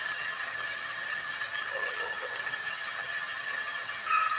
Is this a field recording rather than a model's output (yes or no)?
no